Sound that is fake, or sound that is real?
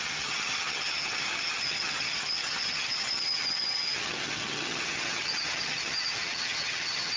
fake